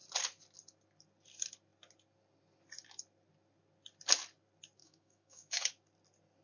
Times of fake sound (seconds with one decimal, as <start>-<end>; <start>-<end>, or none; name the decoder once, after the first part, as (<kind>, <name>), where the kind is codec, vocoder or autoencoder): 4.8-5.7 (autoencoder, DAC-VAE)